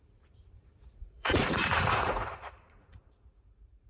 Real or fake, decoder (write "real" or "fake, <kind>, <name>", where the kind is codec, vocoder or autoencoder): fake, vocoder, Vocos